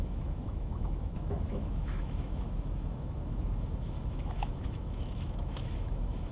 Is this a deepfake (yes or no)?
yes